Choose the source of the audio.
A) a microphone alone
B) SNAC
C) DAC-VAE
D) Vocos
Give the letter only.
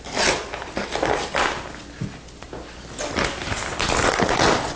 A